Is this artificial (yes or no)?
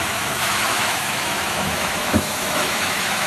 yes